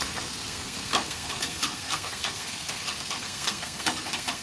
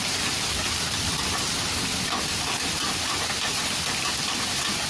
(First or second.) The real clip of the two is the second